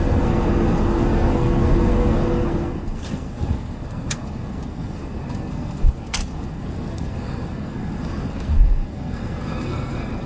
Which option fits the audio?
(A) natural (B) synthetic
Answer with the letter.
B